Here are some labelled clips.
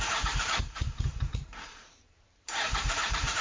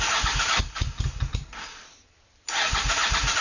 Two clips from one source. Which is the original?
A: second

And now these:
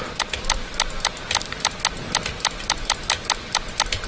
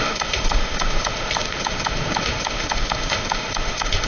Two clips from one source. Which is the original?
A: first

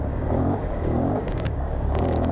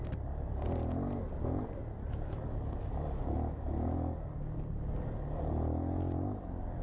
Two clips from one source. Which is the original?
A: second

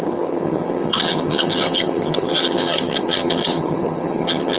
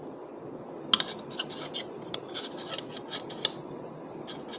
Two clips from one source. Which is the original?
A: second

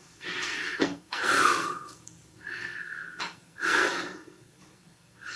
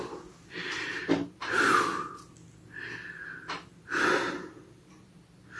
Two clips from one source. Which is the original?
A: second